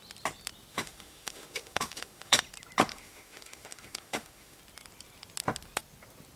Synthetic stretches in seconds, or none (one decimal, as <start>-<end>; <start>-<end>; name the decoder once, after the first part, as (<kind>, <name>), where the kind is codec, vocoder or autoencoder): 0.7-2.4 (autoencoder, DAC-VAE); 2.9-4.6